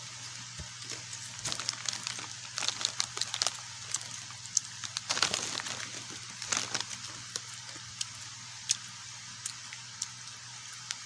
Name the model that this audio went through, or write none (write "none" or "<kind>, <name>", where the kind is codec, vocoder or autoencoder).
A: none